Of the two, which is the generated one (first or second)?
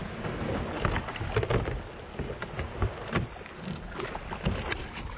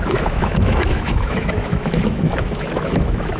second